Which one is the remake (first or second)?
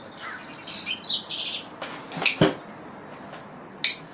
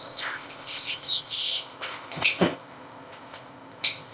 second